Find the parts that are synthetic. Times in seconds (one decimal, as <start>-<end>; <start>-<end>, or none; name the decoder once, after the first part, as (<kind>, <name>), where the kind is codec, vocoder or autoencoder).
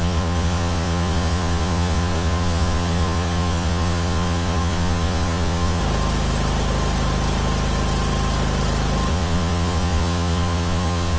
0.0-5.8 (vocoder, Vocos); 9.1-11.2